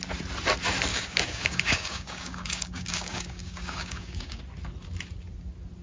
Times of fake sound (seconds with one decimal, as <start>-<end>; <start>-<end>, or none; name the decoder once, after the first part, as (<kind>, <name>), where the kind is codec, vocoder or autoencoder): 0.9-4.4 (codec, DAC)